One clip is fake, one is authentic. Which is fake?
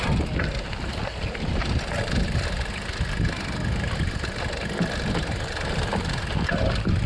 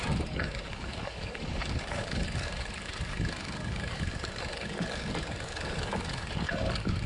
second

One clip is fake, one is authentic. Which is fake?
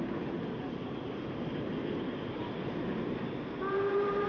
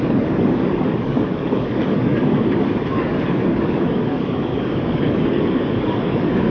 second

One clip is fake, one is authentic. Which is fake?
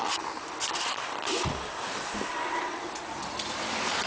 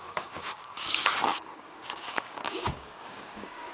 second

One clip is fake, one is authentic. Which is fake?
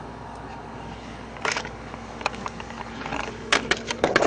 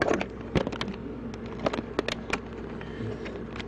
first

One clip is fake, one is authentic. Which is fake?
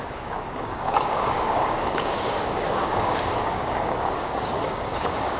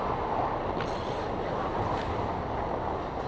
first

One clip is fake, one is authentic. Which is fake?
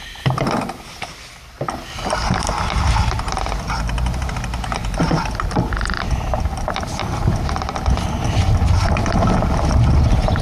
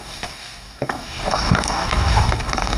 second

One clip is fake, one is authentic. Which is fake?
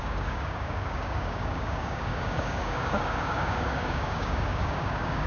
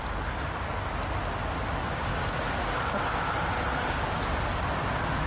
first